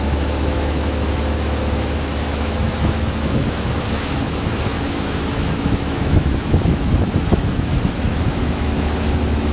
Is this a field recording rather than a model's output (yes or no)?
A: no